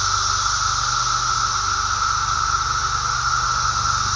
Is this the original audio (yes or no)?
yes